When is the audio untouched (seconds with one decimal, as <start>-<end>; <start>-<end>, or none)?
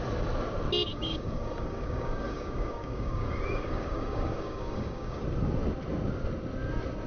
0.0-0.9; 5.2-7.1